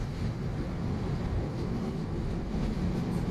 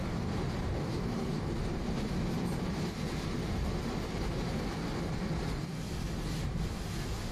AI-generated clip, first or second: second